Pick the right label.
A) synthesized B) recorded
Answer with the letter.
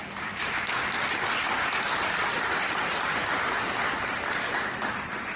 B